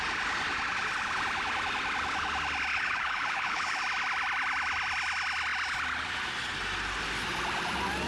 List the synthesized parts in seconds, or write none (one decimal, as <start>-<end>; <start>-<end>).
2.7-3.8